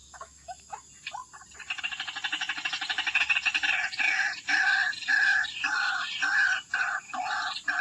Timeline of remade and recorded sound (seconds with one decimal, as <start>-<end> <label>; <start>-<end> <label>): 0.0-0.7 remade; 0.7-7.8 recorded